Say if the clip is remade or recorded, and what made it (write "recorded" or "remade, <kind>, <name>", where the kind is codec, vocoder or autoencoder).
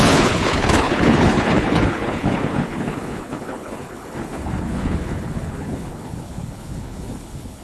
remade, codec, HILCodec